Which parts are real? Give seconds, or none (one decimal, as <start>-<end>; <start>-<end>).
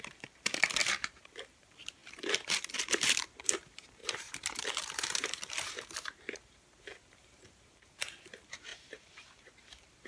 none